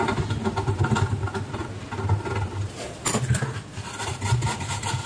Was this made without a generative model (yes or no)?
yes